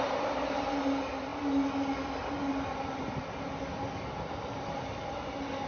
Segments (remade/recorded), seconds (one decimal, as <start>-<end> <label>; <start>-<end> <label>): 0.0-5.7 recorded